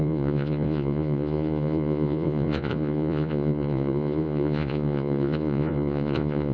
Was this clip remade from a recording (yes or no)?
yes